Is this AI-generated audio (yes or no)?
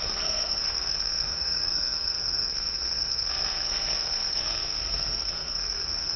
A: yes